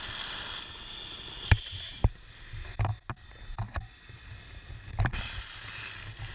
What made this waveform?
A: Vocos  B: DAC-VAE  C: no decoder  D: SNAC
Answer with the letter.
C